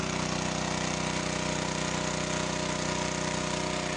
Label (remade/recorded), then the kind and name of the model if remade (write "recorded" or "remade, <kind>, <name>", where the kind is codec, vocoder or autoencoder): recorded